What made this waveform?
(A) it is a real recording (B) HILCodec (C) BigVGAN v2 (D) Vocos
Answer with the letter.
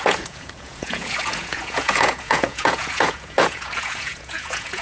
D